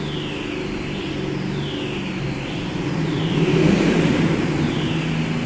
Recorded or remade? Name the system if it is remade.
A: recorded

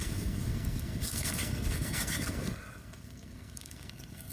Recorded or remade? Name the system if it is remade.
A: remade, codec, SNAC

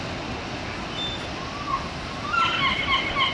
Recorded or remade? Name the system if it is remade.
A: recorded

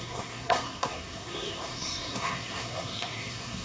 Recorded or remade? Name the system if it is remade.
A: remade, codec, SNAC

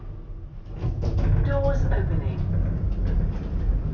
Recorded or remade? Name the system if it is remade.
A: recorded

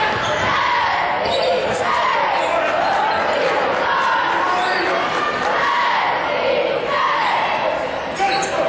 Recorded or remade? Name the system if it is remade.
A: recorded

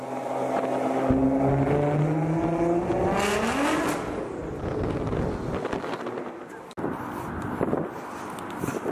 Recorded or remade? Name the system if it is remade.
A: recorded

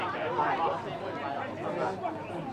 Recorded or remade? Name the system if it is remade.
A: recorded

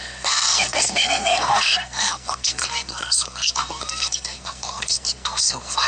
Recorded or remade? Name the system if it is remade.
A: remade, codec, SNAC